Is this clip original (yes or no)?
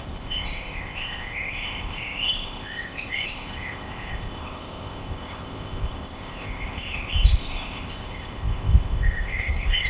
no